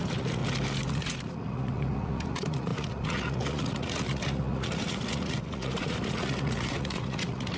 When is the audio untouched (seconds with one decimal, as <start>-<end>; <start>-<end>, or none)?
0.4-0.9